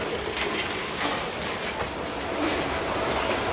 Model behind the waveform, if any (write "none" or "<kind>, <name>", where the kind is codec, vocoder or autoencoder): none